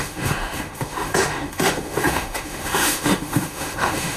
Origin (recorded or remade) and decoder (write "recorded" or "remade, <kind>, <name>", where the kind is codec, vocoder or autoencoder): remade, autoencoder, DAC-VAE